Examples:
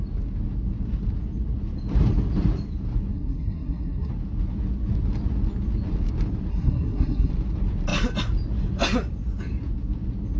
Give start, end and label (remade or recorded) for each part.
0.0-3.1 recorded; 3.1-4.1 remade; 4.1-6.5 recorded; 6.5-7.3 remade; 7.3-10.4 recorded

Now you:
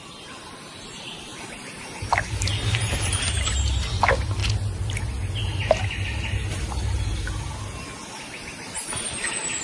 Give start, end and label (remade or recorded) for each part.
0.0-1.3 recorded; 1.3-4.0 remade; 4.0-9.6 recorded

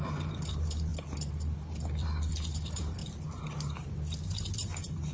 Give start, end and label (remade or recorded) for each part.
0.0-0.9 remade; 0.9-2.0 recorded; 2.0-3.0 remade; 3.0-3.7 recorded; 3.7-5.1 remade

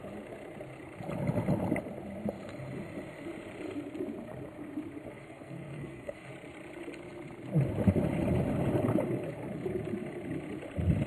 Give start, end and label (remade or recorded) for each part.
0.0-5.1 recorded; 5.1-6.3 remade; 6.3-11.1 recorded

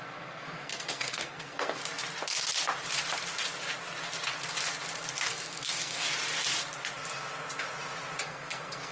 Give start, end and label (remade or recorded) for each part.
0.0-1.8 remade; 1.8-5.3 recorded; 5.3-6.0 remade; 6.0-8.2 recorded; 8.2-8.9 remade

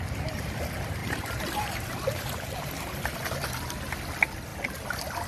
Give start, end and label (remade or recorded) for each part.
0.0-1.0 recorded; 1.0-2.7 remade; 2.7-5.3 recorded

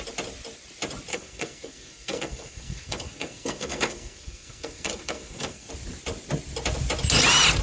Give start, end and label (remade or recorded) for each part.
0.0-1.1 recorded; 1.1-5.7 remade; 5.7-7.6 recorded

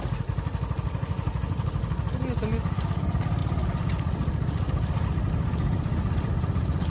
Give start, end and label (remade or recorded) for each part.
0.0-6.9 recorded